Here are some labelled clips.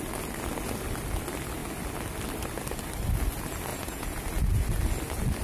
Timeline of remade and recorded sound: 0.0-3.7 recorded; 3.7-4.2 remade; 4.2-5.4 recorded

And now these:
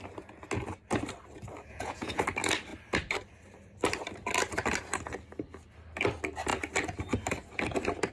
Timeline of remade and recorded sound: 0.0-1.7 recorded; 1.7-2.2 remade; 2.2-8.1 recorded

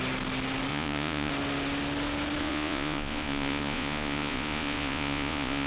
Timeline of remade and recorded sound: 0.0-0.7 recorded; 0.7-1.3 remade; 1.3-2.4 recorded; 2.4-5.7 remade